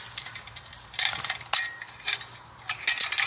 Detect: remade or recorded recorded